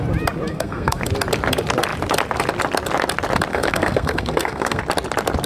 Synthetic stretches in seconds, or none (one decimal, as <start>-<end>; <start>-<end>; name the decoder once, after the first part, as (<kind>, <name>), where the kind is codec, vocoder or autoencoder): 0.5-1.0 (codec, SNAC); 3.5-4.8